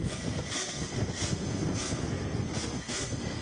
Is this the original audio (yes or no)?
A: no